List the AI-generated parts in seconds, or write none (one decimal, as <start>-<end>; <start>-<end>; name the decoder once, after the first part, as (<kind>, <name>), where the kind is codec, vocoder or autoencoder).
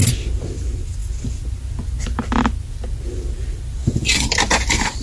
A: 3.8-4.3 (vocoder, Vocos)